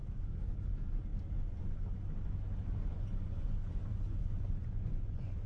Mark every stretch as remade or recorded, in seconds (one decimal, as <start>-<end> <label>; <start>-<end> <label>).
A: 0.0-2.6 recorded; 2.6-5.5 remade